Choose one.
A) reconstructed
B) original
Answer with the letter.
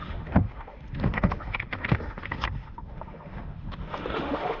A